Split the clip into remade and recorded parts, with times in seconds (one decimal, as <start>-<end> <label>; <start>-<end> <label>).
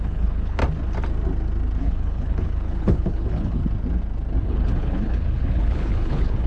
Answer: 0.0-0.6 remade; 0.6-1.8 recorded; 1.8-3.6 remade; 3.6-4.4 recorded; 4.4-6.5 remade